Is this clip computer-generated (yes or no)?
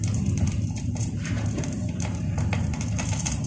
yes